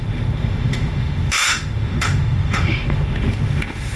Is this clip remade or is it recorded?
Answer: remade